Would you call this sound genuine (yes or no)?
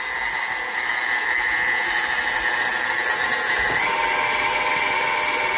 yes